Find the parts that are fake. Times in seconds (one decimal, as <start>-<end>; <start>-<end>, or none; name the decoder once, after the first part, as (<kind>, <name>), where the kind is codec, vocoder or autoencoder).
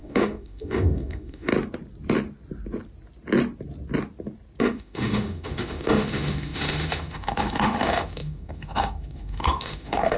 0.0-1.5 (autoencoder, DAC-VAE); 4.6-10.2